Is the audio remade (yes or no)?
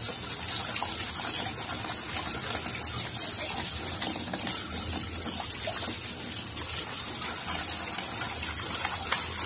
no